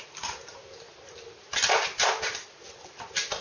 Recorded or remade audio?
recorded